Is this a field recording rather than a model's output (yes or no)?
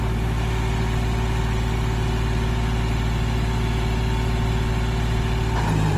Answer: yes